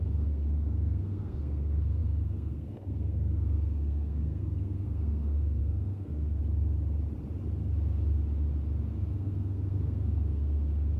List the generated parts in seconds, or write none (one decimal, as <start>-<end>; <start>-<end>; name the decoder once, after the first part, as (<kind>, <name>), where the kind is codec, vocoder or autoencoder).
0.0-6.4 (codec, SNAC); 8.9-11.0